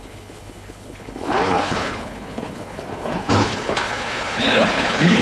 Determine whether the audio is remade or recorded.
remade